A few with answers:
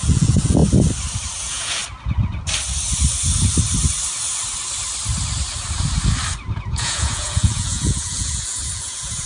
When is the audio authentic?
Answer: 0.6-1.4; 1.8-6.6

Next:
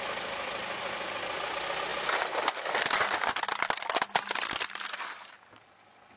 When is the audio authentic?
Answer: 0.0-6.2

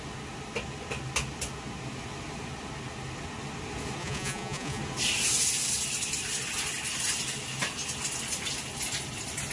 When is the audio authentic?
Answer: 0.0-4.0; 4.8-9.5

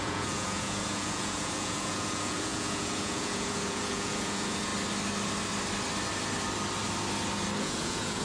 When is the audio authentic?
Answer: 4.7-7.6

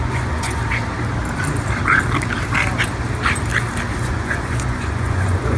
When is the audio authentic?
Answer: 0.6-4.0

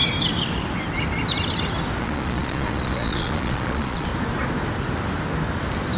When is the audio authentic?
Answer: 0.0-2.0; 4.1-6.0

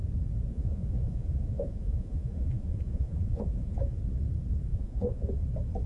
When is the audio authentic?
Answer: 0.0-0.5; 4.0-4.7; 5.3-5.9